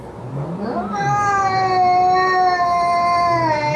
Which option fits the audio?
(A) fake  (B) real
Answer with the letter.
B